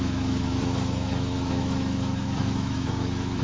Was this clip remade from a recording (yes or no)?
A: yes